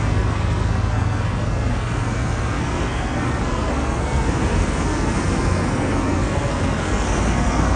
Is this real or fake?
fake